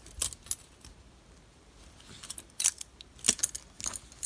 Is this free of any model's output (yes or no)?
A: yes